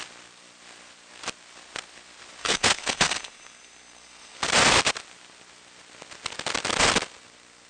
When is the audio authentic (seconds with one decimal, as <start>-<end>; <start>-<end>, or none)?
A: 0.0-2.4; 4.4-7.7